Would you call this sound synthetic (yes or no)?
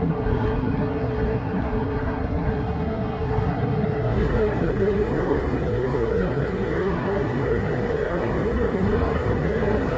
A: yes